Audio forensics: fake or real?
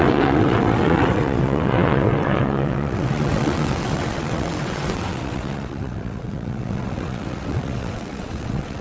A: fake